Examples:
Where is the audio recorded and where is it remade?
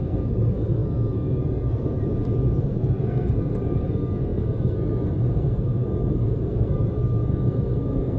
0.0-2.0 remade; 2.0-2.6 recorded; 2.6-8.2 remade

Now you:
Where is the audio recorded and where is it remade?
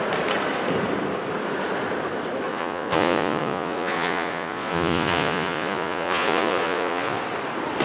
0.0-2.5 recorded; 2.5-7.2 remade; 7.2-7.8 recorded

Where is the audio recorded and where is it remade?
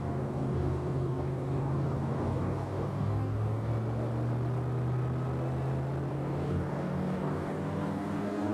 0.0-3.7 remade; 3.7-6.1 recorded; 6.1-8.5 remade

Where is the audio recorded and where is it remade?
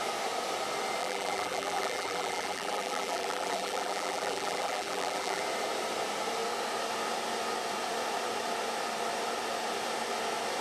0.0-1.0 recorded; 1.0-5.4 remade; 5.4-10.6 recorded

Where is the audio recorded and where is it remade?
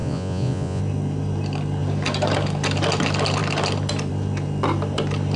0.0-0.8 remade; 0.8-5.4 recorded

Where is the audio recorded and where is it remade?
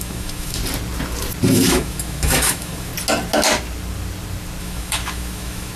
0.0-0.6 remade; 0.6-1.5 recorded; 1.5-2.9 remade; 2.9-4.6 recorded; 4.6-5.8 remade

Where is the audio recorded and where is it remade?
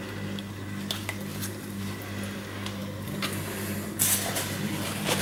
0.0-1.3 recorded; 1.3-2.0 remade; 2.0-5.2 recorded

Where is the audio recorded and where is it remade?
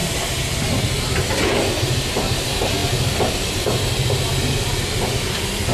0.0-5.7 recorded